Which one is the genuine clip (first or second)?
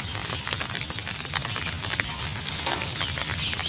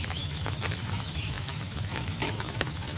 first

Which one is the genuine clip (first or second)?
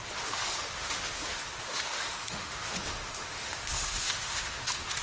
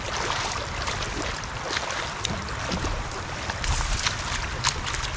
second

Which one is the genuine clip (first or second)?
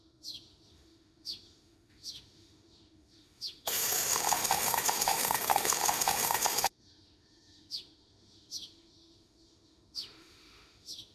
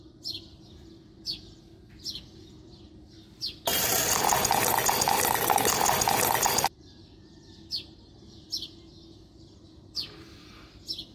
second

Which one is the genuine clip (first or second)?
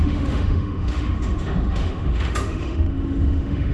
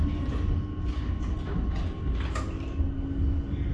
second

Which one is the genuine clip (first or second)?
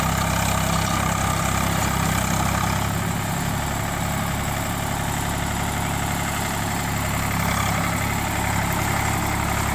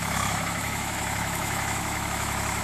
first